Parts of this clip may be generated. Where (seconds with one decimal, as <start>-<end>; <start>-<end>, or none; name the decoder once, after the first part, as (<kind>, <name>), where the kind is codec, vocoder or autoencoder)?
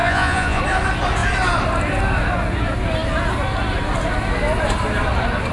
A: 0.0-0.6 (vocoder, Vocos)